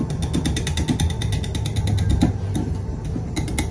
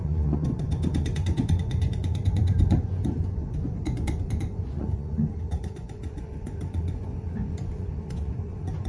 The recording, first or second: first